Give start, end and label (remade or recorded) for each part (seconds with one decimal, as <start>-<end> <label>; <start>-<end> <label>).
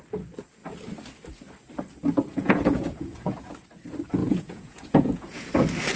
0.0-2.3 recorded; 2.3-3.5 remade; 3.5-4.2 recorded; 4.2-5.5 remade; 5.5-6.0 recorded